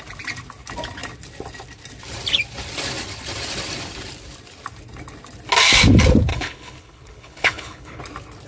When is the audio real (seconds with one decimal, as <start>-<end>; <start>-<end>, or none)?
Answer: 0.0-6.3; 8.0-8.5